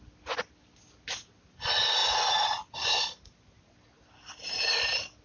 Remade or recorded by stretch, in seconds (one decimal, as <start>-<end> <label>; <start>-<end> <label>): 0.0-5.2 recorded